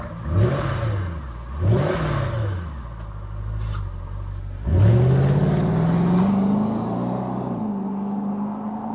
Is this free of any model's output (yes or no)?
yes